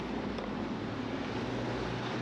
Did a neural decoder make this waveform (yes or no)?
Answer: no